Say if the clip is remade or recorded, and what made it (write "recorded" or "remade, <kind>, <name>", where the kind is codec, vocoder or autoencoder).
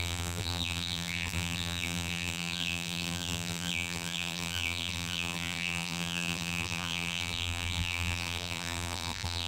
remade, vocoder, BigVGAN v2